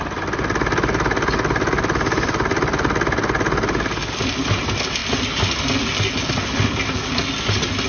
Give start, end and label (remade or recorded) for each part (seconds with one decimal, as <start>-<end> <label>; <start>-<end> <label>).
0.0-7.9 recorded